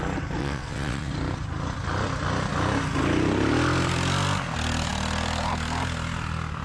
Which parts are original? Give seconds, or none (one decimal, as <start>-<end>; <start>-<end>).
0.0-0.4; 1.1-6.6